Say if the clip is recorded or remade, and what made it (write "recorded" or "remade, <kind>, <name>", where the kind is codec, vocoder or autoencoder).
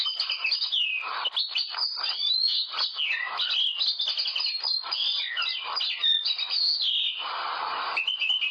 recorded